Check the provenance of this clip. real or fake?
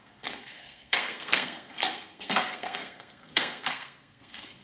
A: fake